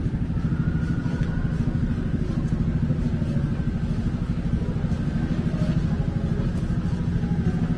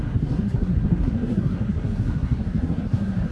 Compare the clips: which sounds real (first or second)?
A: first